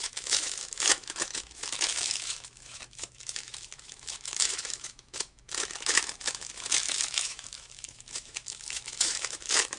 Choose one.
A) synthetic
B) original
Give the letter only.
A